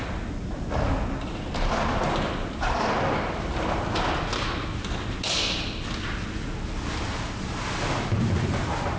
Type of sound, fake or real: real